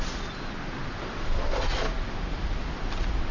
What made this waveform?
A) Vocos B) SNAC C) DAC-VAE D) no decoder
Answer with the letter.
D